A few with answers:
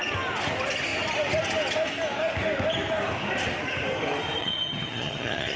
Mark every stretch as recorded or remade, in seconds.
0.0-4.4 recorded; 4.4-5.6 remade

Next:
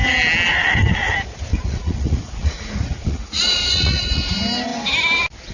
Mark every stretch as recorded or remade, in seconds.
0.0-1.5 recorded; 1.5-4.3 remade; 4.3-5.5 recorded

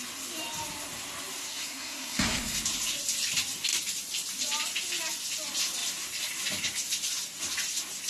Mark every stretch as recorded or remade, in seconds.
0.0-1.5 recorded; 1.5-2.6 remade; 2.6-8.1 recorded

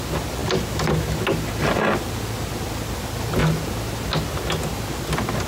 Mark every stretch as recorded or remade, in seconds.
0.0-5.5 recorded

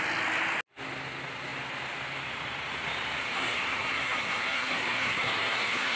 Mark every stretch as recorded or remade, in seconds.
0.0-3.2 recorded; 3.2-6.0 remade

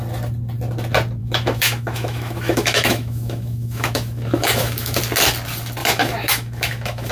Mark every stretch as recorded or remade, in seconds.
0.0-1.2 recorded; 1.2-5.0 remade; 5.0-5.8 recorded; 5.8-7.1 remade

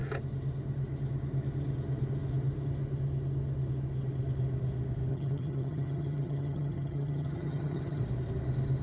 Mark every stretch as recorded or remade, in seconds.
0.0-5.1 recorded; 5.1-8.0 remade; 8.0-8.8 recorded

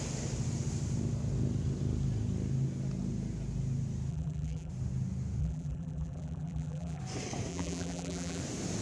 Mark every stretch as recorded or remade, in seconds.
0.0-4.1 recorded; 4.1-4.7 remade; 4.7-5.4 recorded; 5.4-7.0 remade; 7.0-7.5 recorded; 7.5-8.4 remade; 8.4-8.8 recorded